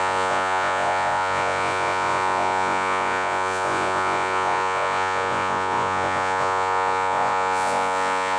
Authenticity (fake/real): fake